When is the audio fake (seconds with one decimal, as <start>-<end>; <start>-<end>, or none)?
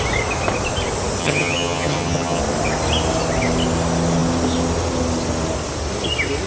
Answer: 1.2-2.4